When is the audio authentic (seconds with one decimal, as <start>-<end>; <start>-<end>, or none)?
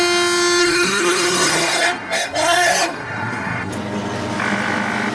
0.0-0.6; 3.7-5.1